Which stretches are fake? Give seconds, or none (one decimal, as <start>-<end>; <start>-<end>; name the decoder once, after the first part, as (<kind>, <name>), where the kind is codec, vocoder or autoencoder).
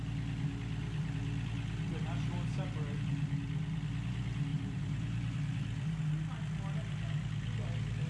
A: 4.5-6.0 (vocoder, BigVGAN v2)